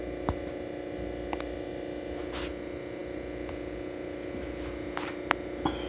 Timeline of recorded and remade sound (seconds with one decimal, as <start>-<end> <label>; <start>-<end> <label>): 0.0-5.9 recorded